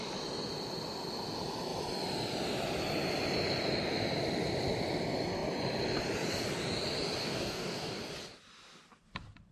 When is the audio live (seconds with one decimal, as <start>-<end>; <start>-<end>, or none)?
0.0-7.2; 8.0-9.5